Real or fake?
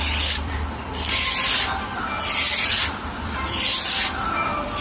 fake